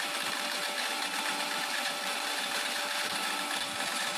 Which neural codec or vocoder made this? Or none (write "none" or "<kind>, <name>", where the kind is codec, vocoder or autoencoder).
vocoder, BigVGAN v2